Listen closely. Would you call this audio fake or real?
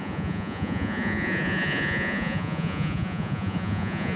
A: fake